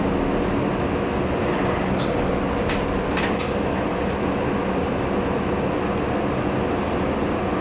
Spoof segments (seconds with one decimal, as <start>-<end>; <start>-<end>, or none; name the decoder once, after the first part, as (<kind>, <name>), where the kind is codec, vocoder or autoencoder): none